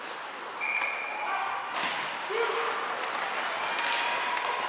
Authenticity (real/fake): real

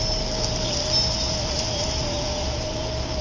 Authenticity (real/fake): real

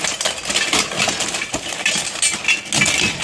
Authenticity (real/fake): real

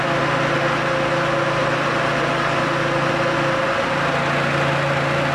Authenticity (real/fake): real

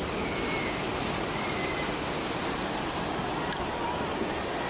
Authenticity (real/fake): real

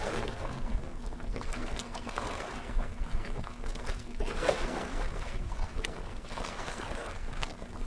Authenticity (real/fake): fake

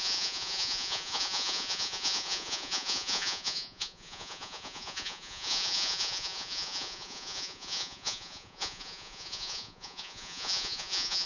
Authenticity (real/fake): fake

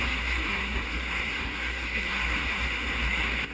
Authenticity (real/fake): fake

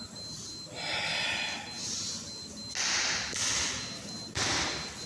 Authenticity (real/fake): real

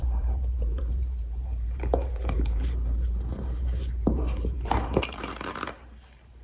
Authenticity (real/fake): fake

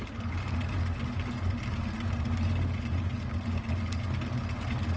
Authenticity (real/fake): real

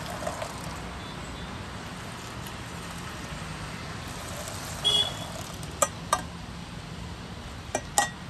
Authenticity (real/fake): real